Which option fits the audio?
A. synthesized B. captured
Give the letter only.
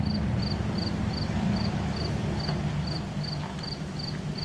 B